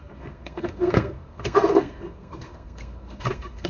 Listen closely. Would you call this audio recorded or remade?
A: remade